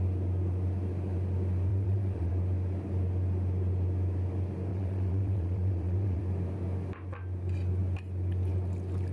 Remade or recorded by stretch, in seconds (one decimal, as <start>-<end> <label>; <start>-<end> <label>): 0.0-1.7 recorded; 1.7-2.3 remade; 2.3-4.7 recorded; 4.7-6.2 remade; 6.2-9.1 recorded